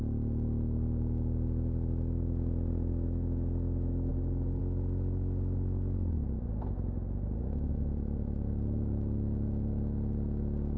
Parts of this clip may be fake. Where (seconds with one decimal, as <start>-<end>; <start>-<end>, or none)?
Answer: 4.1-4.6